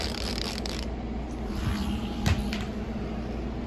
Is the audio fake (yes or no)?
no